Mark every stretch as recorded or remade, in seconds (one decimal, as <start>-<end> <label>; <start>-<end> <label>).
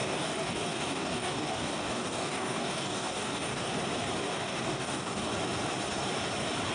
0.0-3.7 remade; 3.7-4.2 recorded; 4.2-5.3 remade; 5.3-6.7 recorded